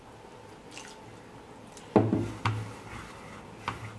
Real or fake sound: real